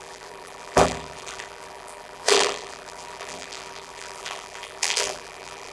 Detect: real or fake fake